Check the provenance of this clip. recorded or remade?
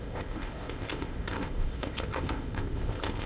remade